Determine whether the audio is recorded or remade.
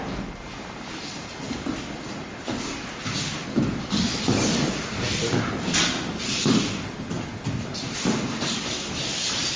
recorded